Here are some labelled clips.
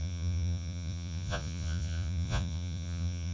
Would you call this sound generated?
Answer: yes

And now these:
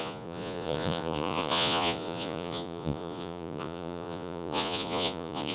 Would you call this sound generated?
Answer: yes